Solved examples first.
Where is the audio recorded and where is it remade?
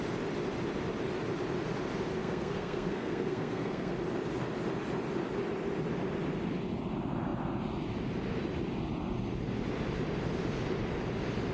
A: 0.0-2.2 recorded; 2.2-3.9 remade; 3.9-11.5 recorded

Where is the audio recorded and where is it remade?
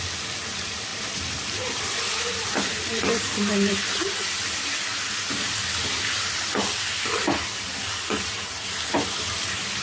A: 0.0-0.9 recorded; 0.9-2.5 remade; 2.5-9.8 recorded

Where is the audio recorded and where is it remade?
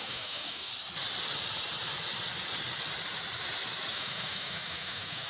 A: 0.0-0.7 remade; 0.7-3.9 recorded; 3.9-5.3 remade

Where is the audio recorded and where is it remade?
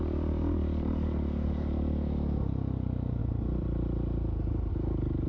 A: 0.0-3.2 remade; 3.2-4.7 recorded; 4.7-5.3 remade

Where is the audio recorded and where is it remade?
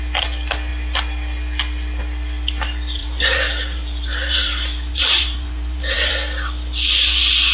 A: 0.0-3.0 recorded; 3.0-6.1 remade; 6.1-7.5 recorded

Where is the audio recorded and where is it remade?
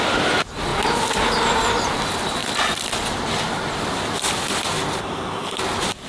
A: 0.0-5.0 recorded; 5.0-5.6 remade; 5.6-6.1 recorded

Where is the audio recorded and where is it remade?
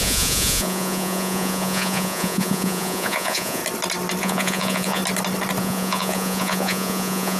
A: 0.0-3.6 remade; 3.6-4.2 recorded; 4.2-5.0 remade; 5.0-5.6 recorded; 5.6-7.4 remade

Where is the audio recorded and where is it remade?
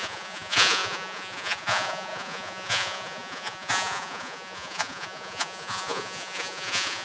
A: 0.0-7.0 remade